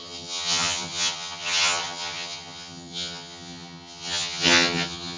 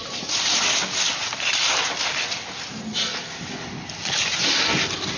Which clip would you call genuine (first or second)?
second